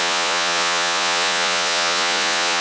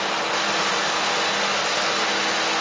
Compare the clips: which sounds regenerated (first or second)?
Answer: first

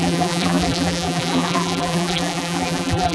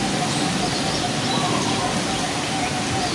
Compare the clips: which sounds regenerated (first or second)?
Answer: first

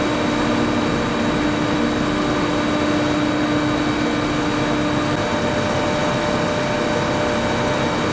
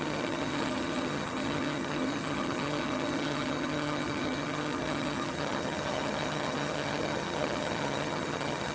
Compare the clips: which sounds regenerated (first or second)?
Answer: second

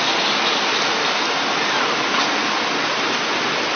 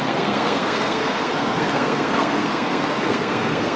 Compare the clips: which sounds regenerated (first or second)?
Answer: second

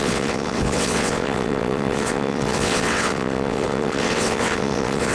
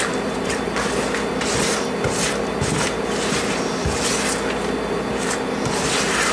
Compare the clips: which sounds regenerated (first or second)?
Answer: first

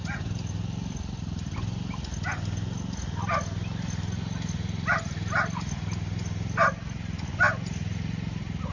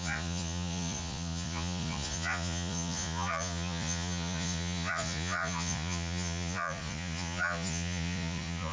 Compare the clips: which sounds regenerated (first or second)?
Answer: second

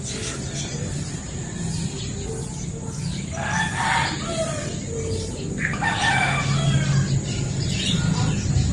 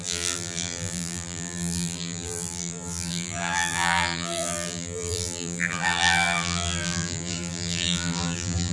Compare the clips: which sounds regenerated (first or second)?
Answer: second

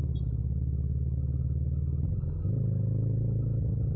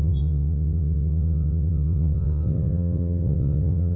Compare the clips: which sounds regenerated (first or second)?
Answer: second